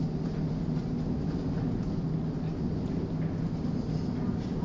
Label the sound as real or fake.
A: real